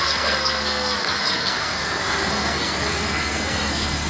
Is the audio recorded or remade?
remade